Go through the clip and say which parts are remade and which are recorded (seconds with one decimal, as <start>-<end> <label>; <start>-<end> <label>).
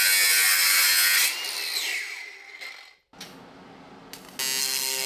0.0-4.6 recorded; 4.6-5.1 remade